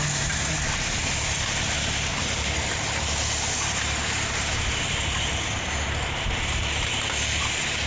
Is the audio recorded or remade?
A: recorded